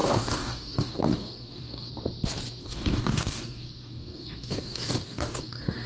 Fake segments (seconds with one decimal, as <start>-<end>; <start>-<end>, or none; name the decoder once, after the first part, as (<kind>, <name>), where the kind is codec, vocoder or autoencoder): 0.0-1.9 (codec, DAC); 2.6-5.9